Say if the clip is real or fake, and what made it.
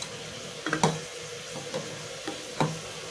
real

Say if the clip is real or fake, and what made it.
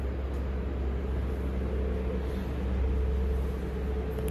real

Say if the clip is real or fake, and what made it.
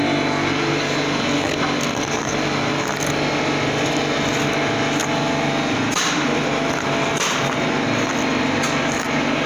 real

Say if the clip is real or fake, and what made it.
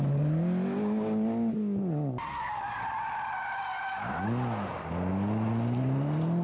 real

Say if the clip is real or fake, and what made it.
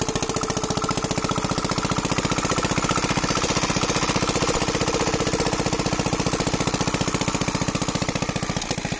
real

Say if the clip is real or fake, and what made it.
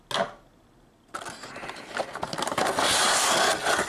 real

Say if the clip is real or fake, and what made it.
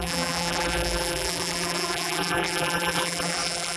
fake, vocoder, BigVGAN v2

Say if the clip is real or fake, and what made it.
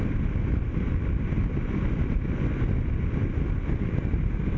real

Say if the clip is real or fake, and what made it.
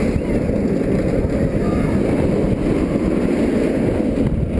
real